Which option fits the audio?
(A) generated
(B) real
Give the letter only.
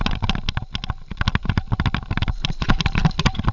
B